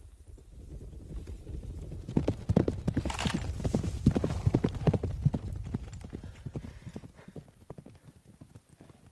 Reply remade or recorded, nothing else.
recorded